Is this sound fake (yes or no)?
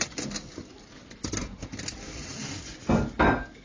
no